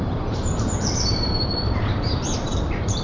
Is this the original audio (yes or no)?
no